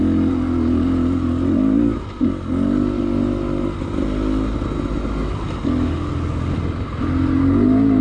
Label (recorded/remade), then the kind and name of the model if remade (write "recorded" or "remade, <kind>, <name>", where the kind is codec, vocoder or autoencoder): recorded